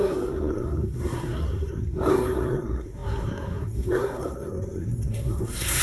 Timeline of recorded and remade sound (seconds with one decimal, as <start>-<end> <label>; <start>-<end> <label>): 0.0-5.8 remade